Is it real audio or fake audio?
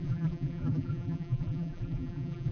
fake